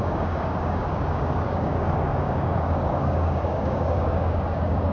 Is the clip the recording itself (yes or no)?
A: no